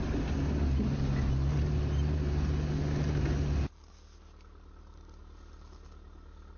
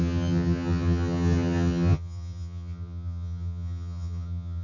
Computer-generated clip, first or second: second